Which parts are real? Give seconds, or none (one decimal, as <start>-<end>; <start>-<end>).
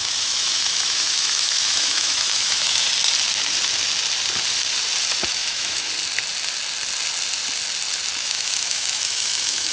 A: 2.9-5.4; 5.9-8.2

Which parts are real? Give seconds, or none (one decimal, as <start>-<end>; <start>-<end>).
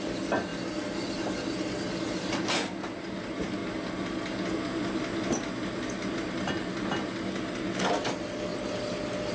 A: 0.0-9.3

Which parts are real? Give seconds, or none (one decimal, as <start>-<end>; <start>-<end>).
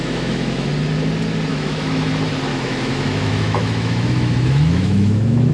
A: 0.7-1.5; 2.1-2.5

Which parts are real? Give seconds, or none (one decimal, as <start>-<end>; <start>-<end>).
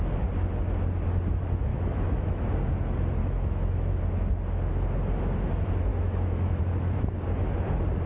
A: 0.0-1.7; 2.5-3.2; 3.9-5.9; 6.6-8.1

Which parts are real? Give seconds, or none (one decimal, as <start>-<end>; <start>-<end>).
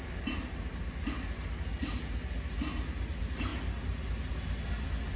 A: 0.0-5.2